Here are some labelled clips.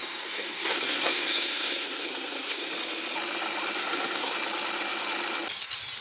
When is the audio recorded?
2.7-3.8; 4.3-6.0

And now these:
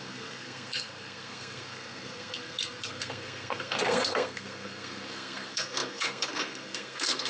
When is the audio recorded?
none

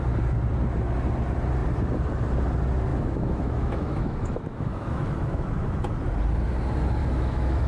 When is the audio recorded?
0.0-2.9; 5.9-7.0

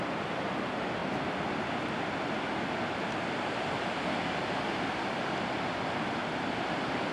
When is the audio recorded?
0.0-7.1

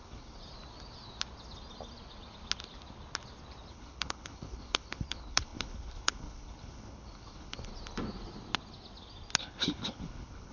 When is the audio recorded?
0.4-3.7; 7.7-9.4